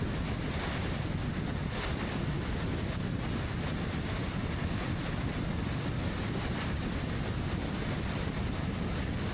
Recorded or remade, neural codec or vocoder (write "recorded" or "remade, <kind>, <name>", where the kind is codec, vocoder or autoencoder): recorded